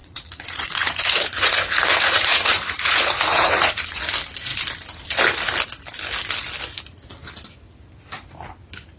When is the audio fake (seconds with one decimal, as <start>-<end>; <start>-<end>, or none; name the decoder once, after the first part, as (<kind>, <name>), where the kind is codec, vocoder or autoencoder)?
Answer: 0.0-4.0 (vocoder, Vocos)